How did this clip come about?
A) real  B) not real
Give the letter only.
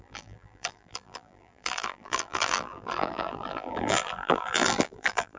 B